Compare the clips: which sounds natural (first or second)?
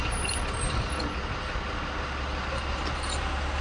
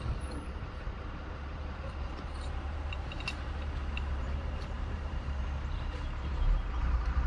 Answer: first